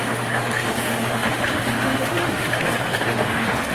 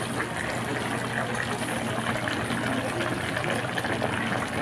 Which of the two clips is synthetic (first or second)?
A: first